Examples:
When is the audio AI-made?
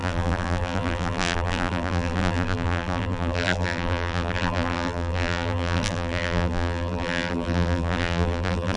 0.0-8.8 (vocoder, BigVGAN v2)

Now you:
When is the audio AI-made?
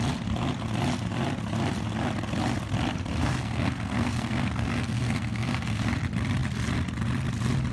3.2-5.9 (codec, SNAC)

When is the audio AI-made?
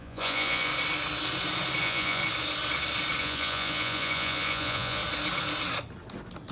0.0-0.7 (vocoder, Vocos); 1.8-2.2; 3.2-5.0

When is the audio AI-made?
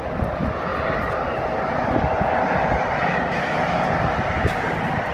0.7-3.3 (vocoder, BigVGAN v2)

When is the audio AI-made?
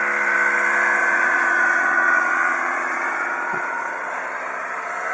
1.0-3.9 (vocoder, Vocos)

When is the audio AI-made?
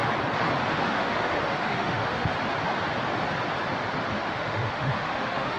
0.7-2.3 (autoencoder, DAC-VAE); 4.1-5.6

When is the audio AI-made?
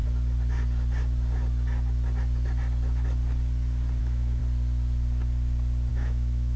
4.0-4.4 (autoencoder, DAC-VAE); 5.9-6.6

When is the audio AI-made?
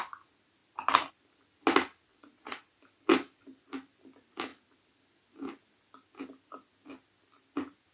2.1-2.7 (vocoder, Vocos)